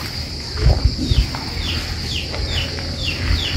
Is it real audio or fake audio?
real